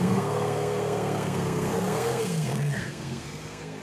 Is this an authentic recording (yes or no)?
no